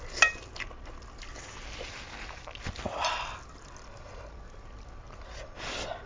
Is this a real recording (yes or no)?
yes